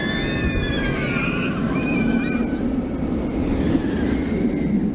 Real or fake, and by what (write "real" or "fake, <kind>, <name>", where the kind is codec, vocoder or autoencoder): real